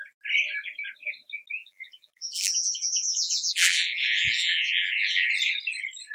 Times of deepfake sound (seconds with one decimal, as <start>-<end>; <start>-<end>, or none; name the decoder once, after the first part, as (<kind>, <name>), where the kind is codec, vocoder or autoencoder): 1.6-5.3 (vocoder, BigVGAN v2)